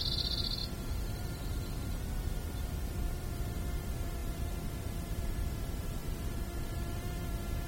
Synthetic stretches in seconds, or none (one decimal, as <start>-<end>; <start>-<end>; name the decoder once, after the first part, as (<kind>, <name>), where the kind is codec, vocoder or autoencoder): none